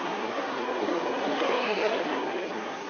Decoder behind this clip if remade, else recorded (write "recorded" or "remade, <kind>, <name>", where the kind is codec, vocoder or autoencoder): remade, codec, SNAC